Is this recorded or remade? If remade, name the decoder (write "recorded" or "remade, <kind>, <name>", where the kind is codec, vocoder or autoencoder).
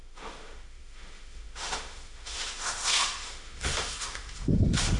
remade, autoencoder, DAC-VAE